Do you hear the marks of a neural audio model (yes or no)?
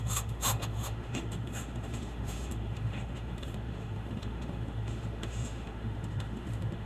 yes